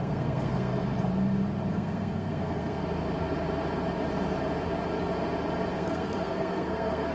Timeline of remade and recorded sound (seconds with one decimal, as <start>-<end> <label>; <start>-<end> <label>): 0.0-0.7 remade; 0.7-1.7 recorded; 1.7-2.8 remade; 2.8-5.7 recorded; 5.7-7.1 remade

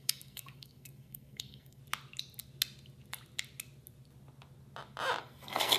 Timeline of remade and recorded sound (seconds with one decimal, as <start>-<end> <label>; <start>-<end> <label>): 0.0-1.8 remade; 1.8-5.2 recorded; 5.2-5.8 remade

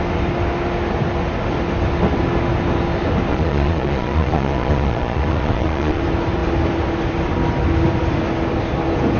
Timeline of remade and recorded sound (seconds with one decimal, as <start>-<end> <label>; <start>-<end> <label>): 0.0-3.3 recorded; 3.3-6.0 remade; 6.0-9.2 recorded

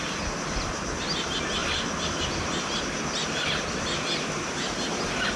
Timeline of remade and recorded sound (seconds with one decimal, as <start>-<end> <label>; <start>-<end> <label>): 0.0-5.4 recorded

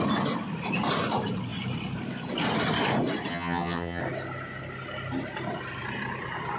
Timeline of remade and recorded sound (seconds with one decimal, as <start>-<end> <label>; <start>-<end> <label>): 0.0-3.3 recorded; 3.3-4.0 remade; 4.0-6.6 recorded

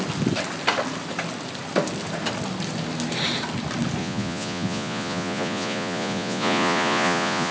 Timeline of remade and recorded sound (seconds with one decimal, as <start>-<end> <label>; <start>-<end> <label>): 0.0-4.0 recorded; 4.0-7.5 remade

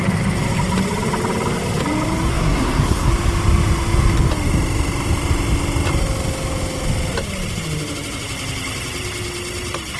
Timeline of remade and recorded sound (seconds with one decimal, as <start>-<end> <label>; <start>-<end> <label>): 0.0-2.3 recorded; 2.3-3.1 remade; 3.1-10.0 recorded

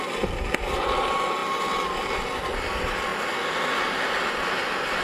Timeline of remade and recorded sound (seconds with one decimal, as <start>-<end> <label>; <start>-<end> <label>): 0.0-5.0 recorded